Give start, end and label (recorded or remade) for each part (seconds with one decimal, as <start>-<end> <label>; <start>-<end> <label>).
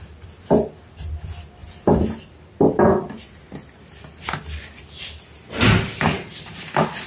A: 0.0-7.1 recorded